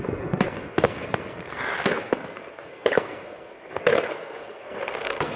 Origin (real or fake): fake